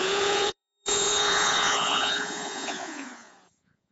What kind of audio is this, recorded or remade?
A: remade